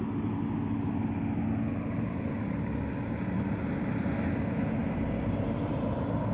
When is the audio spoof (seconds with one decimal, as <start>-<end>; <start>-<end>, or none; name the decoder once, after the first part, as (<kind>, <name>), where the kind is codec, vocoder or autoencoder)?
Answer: 1.7-4.1 (vocoder, BigVGAN v2); 4.8-5.7